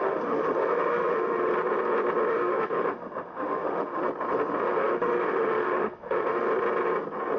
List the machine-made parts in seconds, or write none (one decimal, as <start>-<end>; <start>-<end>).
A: 0.0-1.5; 2.3-4.0; 4.6-6.5